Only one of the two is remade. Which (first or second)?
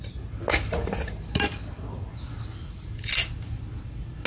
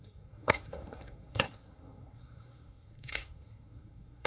second